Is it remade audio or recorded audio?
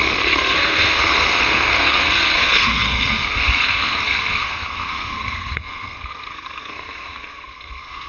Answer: remade